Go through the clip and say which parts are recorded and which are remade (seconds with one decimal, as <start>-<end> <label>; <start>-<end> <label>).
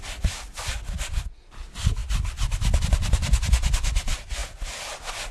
0.0-5.3 recorded